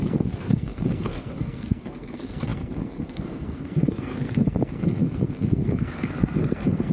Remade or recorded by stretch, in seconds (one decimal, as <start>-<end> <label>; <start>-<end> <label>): 0.0-6.9 remade